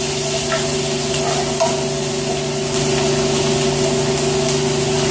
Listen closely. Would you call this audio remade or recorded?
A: recorded